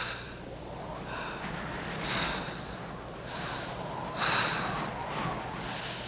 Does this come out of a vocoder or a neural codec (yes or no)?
no